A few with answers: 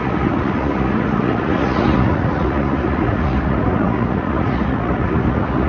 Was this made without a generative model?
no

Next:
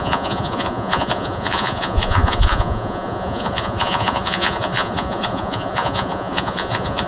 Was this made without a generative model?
no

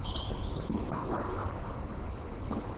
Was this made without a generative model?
no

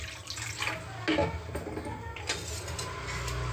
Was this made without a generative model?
yes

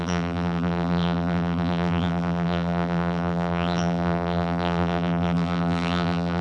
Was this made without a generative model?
no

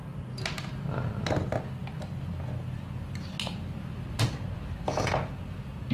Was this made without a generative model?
yes